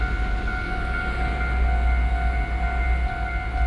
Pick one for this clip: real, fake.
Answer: real